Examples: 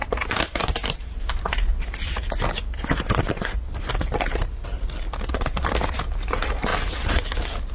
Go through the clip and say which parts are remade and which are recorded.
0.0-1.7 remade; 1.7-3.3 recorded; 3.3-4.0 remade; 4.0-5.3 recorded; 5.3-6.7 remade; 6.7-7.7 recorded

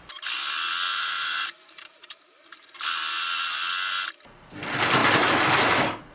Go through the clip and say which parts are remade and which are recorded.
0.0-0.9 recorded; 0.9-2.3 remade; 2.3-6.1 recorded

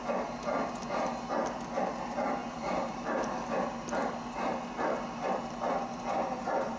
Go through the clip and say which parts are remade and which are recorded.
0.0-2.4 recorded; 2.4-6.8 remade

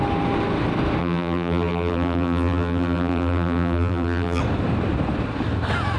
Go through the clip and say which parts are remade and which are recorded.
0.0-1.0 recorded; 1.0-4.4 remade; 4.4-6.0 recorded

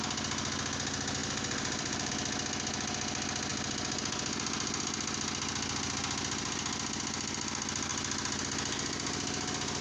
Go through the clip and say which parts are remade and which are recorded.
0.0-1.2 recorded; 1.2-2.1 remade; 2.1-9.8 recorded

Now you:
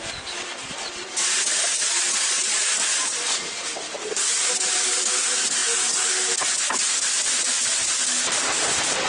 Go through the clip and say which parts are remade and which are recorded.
0.0-9.1 recorded

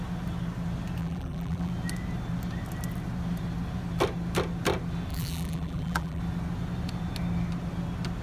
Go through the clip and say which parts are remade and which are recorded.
0.0-1.0 recorded; 1.0-1.7 remade; 1.7-5.1 recorded; 5.1-6.2 remade; 6.2-8.2 recorded

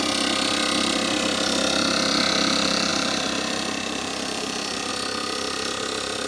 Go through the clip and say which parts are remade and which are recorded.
0.0-2.9 recorded; 2.9-4.9 remade; 4.9-6.3 recorded